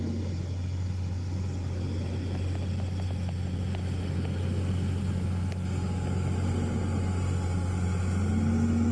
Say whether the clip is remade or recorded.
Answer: recorded